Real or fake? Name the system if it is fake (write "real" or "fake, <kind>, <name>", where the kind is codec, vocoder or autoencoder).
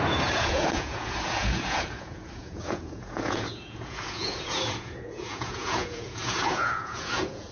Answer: fake, vocoder, Vocos